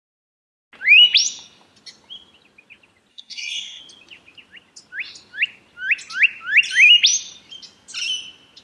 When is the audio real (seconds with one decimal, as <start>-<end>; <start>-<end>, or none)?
0.0-3.1; 3.8-8.6